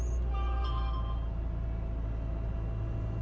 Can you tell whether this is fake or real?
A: real